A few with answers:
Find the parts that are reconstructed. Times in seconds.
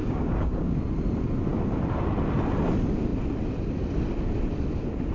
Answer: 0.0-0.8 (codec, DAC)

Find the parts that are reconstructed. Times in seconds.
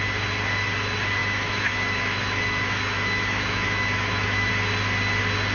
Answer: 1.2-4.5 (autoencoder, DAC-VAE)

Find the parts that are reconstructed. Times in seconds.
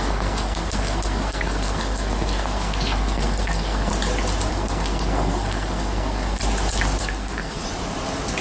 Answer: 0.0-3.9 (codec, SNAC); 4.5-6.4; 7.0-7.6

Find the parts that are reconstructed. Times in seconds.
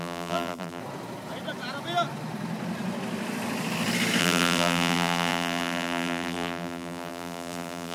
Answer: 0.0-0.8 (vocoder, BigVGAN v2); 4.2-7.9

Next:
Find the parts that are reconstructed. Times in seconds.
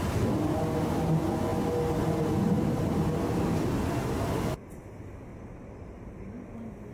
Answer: 5.3-6.3 (vocoder, BigVGAN v2)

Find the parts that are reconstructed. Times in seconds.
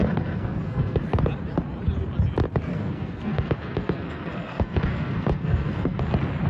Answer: 0.0-1.2 (codec, SNAC); 2.7-6.0